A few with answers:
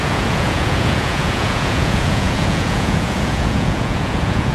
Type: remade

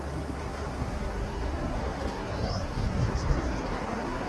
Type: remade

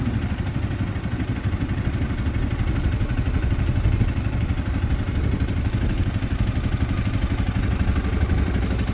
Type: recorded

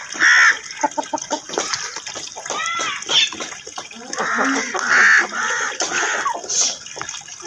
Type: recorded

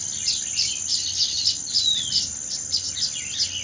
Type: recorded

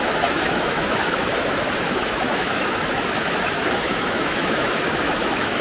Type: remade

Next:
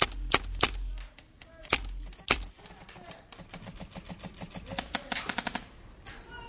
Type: recorded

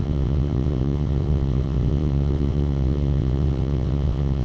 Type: remade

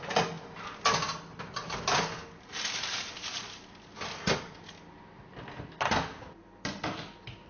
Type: recorded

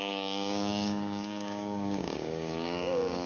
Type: remade